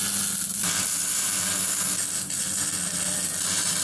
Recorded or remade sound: recorded